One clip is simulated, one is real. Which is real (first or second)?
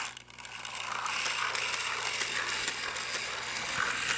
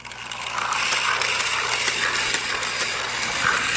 first